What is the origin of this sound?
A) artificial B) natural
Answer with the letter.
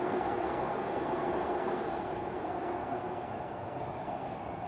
A